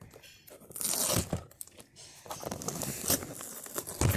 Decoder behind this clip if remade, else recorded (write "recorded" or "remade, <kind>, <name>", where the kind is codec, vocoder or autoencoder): recorded